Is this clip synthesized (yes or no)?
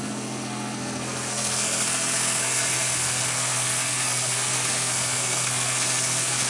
yes